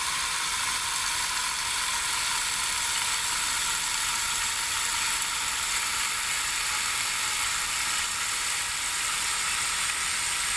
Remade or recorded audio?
recorded